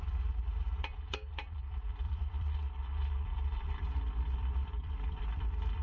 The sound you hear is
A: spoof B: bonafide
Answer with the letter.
A